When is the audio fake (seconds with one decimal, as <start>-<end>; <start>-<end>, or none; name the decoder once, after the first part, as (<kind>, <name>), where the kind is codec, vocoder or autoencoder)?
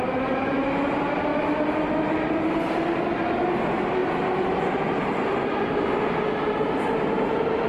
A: none